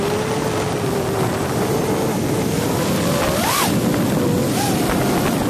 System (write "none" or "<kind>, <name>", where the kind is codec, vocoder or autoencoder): none